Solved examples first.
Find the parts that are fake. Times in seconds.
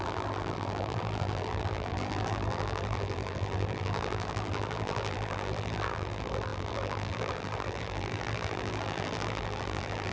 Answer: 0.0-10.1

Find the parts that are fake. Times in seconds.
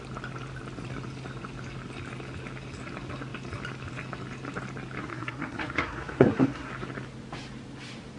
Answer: 5.0-6.7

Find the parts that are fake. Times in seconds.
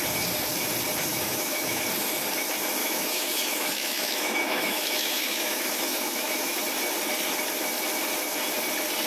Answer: 1.1-1.8; 2.8-6.6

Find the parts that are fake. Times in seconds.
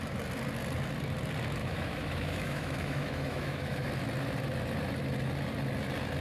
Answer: 1.6-3.9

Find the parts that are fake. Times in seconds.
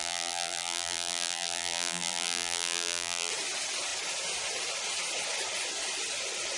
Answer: 0.0-3.3